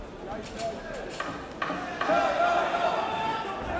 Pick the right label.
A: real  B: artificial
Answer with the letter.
A